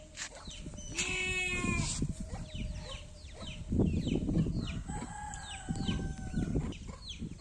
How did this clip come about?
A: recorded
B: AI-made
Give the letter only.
A